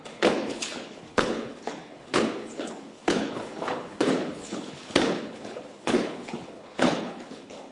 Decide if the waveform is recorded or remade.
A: remade